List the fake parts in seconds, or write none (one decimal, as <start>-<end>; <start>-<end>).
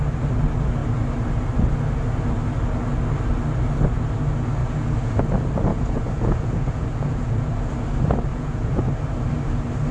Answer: 4.6-5.1; 5.7-7.7; 8.3-8.8